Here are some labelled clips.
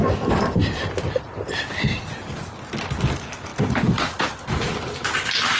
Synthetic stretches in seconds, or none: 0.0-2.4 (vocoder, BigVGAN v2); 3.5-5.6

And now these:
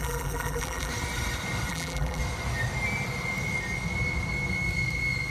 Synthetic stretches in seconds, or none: 0.0-0.9 (vocoder, BigVGAN v2); 1.7-2.2

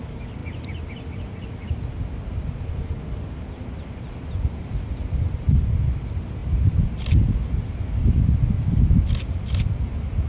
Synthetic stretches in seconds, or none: none